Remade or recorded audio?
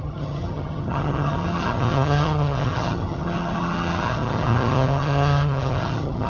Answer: remade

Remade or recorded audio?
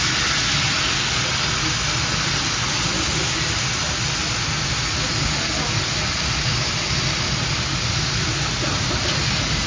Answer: recorded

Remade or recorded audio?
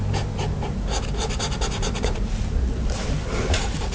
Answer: recorded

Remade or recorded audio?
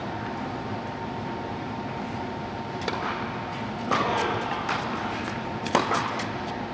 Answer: recorded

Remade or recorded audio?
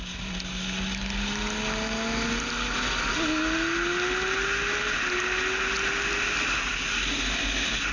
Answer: recorded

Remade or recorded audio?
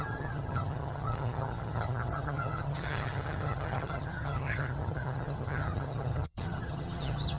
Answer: remade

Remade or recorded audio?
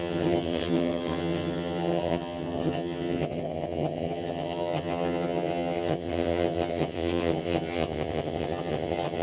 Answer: remade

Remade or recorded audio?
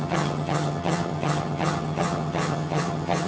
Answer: remade